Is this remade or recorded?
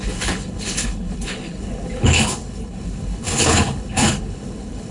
remade